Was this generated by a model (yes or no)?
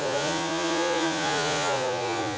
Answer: yes